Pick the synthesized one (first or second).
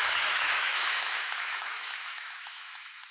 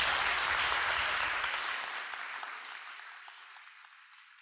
first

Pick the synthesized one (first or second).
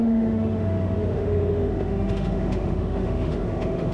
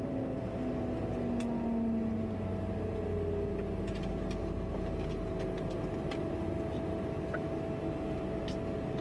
first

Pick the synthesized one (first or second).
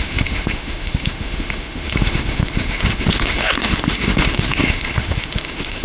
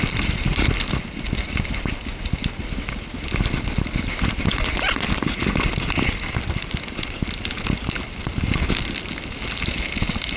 first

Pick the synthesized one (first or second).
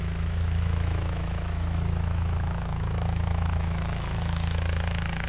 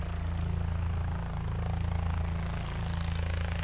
first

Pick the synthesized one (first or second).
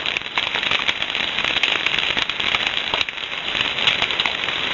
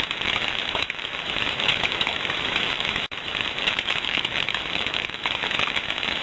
second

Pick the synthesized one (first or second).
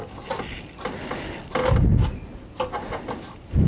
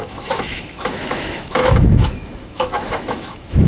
second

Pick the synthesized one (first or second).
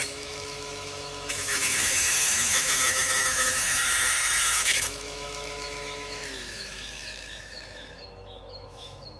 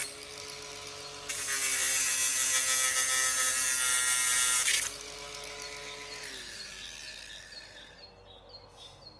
first